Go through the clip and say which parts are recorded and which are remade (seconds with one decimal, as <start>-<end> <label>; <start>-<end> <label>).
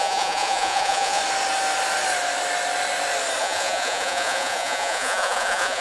0.0-1.2 remade; 1.2-3.4 recorded; 3.4-5.8 remade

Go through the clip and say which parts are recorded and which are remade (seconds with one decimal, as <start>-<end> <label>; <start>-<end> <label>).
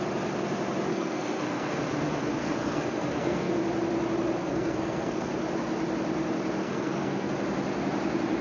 0.0-0.9 recorded; 0.9-1.7 remade; 1.7-2.4 recorded; 2.4-3.5 remade; 3.5-4.4 recorded; 4.4-5.3 remade; 5.3-6.6 recorded; 6.6-7.3 remade; 7.3-8.4 recorded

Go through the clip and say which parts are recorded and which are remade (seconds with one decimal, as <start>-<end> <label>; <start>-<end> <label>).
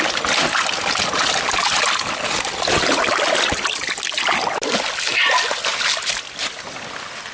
0.0-7.3 recorded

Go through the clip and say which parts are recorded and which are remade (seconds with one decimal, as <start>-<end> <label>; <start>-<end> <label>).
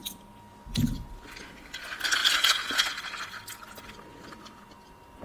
0.0-5.2 recorded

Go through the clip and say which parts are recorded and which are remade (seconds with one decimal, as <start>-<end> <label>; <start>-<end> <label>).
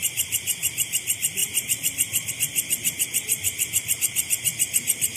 0.0-1.4 recorded; 1.4-2.3 remade; 2.3-3.3 recorded; 3.3-4.0 remade; 4.0-5.2 recorded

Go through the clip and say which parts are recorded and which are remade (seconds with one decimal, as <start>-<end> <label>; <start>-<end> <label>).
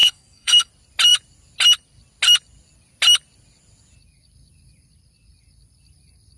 0.0-0.7 remade; 0.7-6.4 recorded